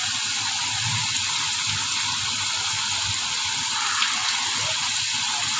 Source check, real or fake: real